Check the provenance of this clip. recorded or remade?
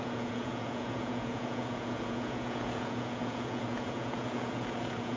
remade